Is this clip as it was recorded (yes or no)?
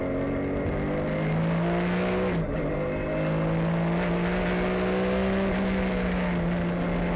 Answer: yes